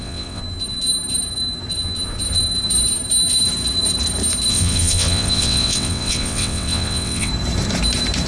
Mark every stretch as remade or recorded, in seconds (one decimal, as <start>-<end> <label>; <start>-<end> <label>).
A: 0.0-0.4 remade; 0.4-4.5 recorded; 4.5-7.3 remade; 7.3-8.3 recorded